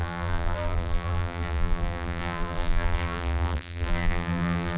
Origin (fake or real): fake